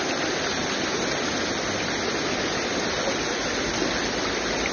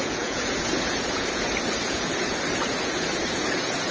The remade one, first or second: second